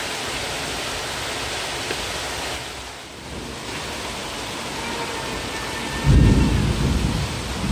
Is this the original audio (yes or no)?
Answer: yes